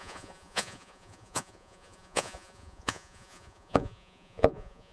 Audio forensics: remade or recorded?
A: remade